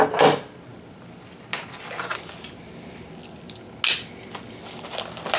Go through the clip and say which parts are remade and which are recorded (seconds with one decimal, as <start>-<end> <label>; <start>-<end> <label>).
0.0-5.4 recorded